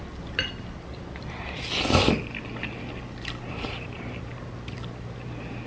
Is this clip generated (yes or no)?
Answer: no